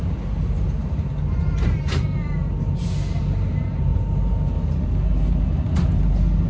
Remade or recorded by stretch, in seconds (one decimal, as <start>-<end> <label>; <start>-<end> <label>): 0.0-6.5 recorded